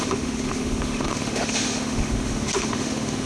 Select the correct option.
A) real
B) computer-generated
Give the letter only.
B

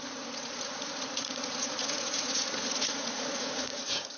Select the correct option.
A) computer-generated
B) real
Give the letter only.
A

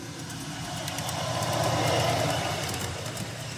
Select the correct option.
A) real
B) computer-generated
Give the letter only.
A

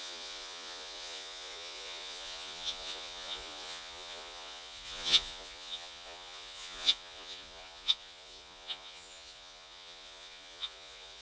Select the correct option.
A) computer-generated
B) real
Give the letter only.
A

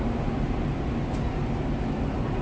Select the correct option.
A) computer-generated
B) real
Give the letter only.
B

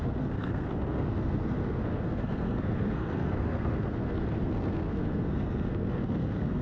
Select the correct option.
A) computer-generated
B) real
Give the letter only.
A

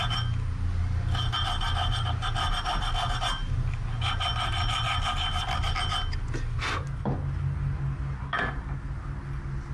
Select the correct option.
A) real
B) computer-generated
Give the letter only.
A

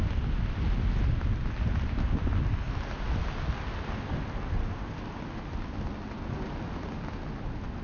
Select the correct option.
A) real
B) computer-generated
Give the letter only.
A